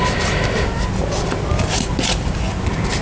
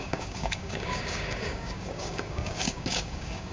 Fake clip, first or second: second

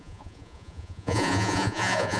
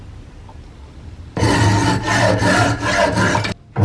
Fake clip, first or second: first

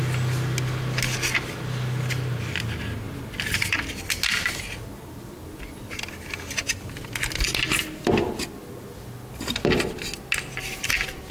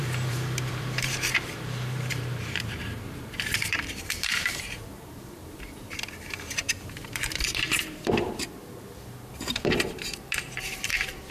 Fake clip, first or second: second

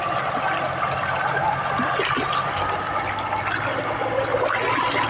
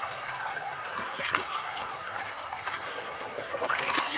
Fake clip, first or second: second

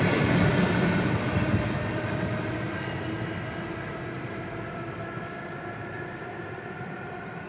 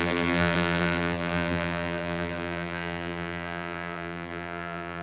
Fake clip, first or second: second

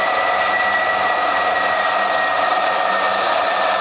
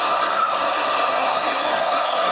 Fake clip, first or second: second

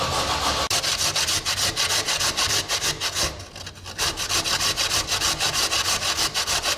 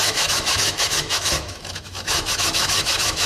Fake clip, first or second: second